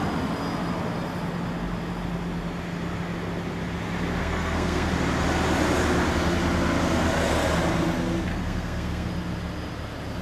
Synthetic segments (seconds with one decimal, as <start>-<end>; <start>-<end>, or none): 4.2-4.9; 8.3-9.1